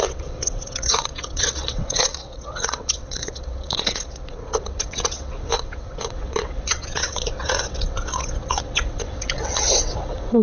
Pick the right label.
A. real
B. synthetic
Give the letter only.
B